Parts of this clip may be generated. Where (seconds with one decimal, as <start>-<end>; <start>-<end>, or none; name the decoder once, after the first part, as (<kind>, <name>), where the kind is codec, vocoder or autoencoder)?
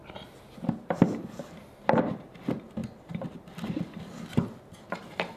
none